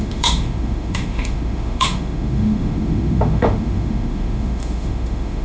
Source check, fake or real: fake